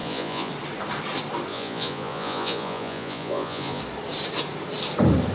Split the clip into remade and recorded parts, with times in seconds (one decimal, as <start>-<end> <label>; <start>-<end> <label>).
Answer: 0.0-0.5 remade; 0.5-1.5 recorded; 1.5-3.8 remade; 3.8-5.3 recorded